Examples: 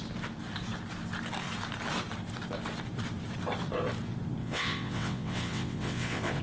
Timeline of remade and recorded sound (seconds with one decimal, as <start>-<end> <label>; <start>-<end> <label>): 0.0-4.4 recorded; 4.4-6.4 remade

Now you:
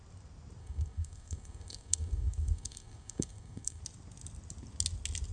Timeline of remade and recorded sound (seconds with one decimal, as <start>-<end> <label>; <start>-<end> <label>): 0.0-0.6 recorded; 0.6-3.8 remade; 3.8-5.3 recorded

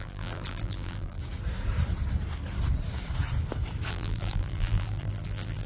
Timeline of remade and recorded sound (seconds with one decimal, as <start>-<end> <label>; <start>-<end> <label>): 0.0-1.2 remade; 1.2-3.9 recorded; 3.9-5.7 remade

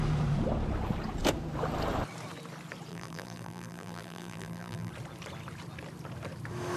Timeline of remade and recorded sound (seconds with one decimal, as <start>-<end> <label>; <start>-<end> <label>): 0.0-2.9 recorded; 2.9-4.9 remade; 4.9-6.8 recorded

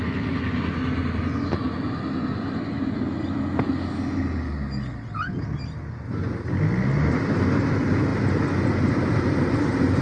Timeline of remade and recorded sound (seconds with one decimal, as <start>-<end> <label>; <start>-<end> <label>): 0.0-10.0 recorded

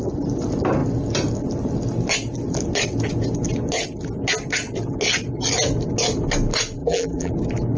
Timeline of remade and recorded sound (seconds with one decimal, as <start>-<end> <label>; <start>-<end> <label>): 0.0-6.8 recorded; 6.8-7.3 remade; 7.3-7.8 recorded

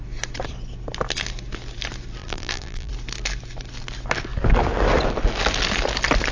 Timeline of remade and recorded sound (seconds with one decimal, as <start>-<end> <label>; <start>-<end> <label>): 0.0-2.2 recorded; 2.2-2.9 remade; 2.9-6.3 recorded

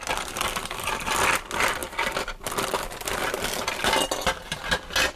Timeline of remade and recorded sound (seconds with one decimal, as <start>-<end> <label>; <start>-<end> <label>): 0.0-5.2 recorded